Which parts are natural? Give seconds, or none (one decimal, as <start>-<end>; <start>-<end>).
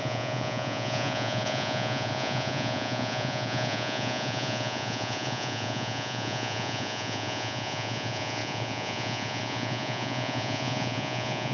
none